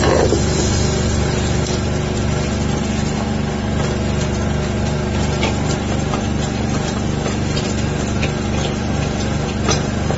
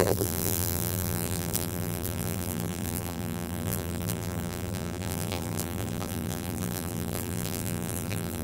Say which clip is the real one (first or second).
first